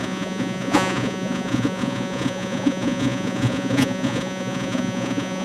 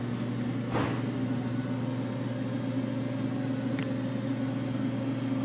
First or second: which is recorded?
second